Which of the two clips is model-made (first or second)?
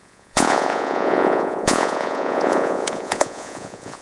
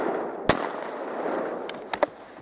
first